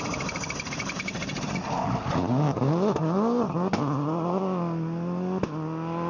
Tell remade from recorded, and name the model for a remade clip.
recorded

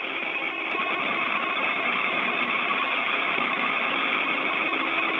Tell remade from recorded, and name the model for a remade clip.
recorded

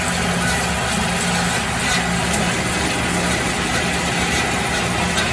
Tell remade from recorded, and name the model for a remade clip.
recorded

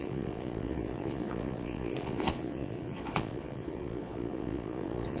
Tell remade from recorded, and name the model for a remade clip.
remade, vocoder, Vocos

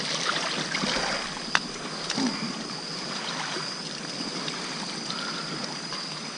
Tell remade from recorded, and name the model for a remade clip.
recorded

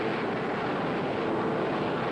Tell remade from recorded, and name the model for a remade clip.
recorded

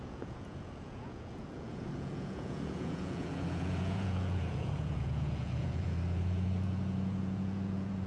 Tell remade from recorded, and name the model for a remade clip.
remade, vocoder, Vocos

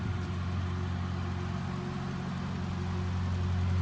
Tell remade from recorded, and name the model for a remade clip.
recorded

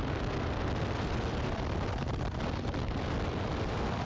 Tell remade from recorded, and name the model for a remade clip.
recorded